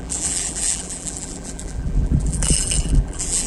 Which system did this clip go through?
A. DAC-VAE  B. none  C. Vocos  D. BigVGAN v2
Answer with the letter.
D